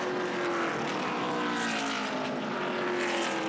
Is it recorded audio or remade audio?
recorded